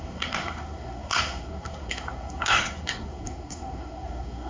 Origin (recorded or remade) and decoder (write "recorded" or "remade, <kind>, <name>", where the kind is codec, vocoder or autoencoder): remade, codec, SNAC